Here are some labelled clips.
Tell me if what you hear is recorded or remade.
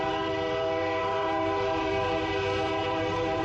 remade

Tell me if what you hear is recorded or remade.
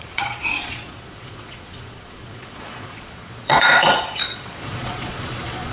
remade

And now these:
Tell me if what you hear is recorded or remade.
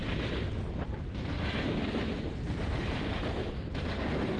recorded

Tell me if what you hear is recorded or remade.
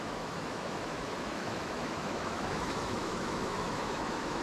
remade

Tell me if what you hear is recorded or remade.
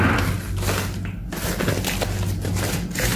recorded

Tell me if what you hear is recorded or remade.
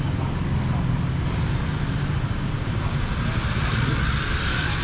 recorded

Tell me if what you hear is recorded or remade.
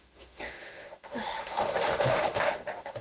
remade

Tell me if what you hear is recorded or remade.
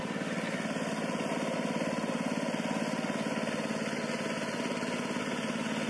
recorded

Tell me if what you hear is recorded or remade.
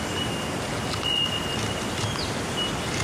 recorded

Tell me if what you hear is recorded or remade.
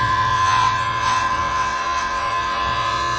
remade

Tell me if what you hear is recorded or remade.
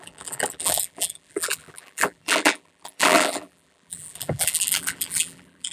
remade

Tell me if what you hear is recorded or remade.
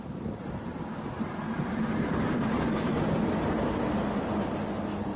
recorded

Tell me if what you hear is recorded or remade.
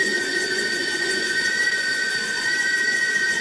remade